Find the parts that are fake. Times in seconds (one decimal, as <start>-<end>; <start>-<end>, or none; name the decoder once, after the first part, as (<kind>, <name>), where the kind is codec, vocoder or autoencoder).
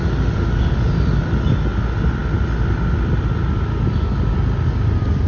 none